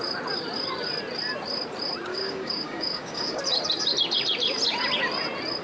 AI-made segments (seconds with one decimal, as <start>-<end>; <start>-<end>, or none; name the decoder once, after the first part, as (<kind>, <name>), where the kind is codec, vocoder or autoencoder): 2.1-3.4 (codec, DAC)